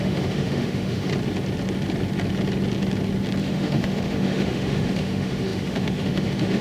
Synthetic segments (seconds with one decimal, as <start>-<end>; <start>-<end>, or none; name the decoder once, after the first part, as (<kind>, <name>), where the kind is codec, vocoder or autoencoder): 0.0-1.1 (autoencoder, DAC-VAE); 3.4-6.6